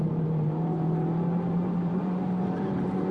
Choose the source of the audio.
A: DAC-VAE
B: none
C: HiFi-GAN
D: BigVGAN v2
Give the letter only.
D